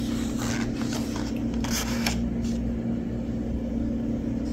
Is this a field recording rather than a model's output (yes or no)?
yes